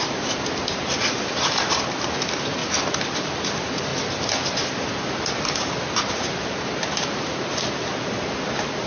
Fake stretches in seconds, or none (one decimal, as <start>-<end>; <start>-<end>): 0.0-2.6; 3.1-3.9; 6.1-8.9